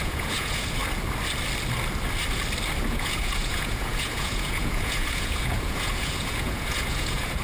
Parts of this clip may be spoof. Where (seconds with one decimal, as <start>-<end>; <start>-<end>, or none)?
0.0-0.8; 2.9-7.4